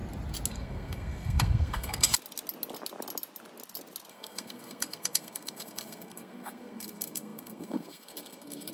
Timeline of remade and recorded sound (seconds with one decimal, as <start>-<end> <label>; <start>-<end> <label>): 0.0-0.5 recorded; 0.5-2.1 remade; 2.1-4.1 recorded; 4.1-8.7 remade